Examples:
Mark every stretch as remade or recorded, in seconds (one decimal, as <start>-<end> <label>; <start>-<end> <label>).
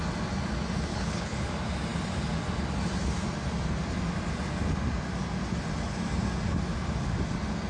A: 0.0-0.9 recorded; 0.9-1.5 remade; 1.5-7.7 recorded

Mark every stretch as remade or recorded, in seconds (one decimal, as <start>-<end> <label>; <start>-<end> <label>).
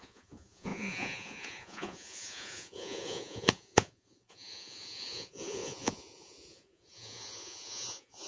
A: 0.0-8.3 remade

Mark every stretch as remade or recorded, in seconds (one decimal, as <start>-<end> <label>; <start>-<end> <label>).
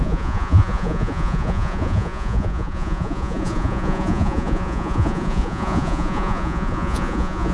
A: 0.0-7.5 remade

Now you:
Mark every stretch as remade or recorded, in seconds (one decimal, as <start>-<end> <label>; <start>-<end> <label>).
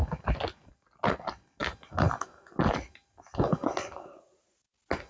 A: 0.0-5.1 recorded